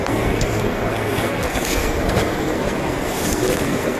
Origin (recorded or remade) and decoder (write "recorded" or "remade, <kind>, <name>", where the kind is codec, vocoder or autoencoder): remade, codec, SNAC